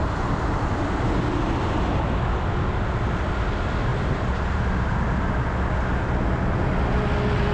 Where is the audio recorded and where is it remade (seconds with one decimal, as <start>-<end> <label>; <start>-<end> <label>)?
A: 0.0-3.9 recorded; 3.9-4.6 remade; 4.6-7.5 recorded

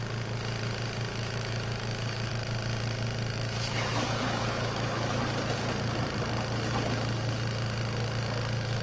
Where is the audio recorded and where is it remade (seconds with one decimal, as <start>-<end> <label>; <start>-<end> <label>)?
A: 0.0-1.1 recorded; 1.1-2.3 remade; 2.3-3.3 recorded; 3.3-5.2 remade; 5.2-8.8 recorded

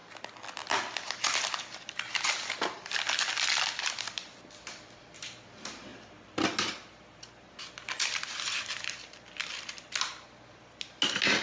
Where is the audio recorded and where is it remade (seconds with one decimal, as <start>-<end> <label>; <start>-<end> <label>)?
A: 0.0-11.4 recorded

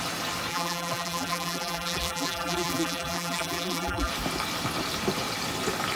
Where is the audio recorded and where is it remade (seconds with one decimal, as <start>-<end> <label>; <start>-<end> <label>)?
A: 0.0-0.5 recorded; 0.5-4.1 remade; 4.1-6.0 recorded

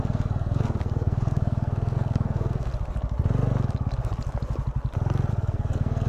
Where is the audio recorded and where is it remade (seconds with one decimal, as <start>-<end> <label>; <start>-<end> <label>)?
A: 0.0-2.7 remade; 2.7-5.3 recorded; 5.3-6.1 remade

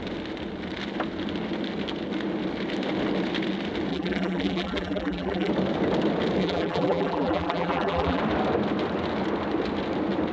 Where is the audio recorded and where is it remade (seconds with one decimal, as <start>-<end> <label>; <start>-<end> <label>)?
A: 0.0-3.9 recorded; 3.9-5.5 remade; 5.5-6.4 recorded; 6.4-8.2 remade; 8.2-10.3 recorded